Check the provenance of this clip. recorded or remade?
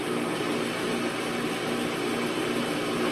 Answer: recorded